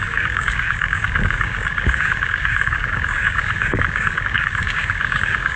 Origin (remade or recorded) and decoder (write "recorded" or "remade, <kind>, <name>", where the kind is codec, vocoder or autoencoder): remade, codec, DAC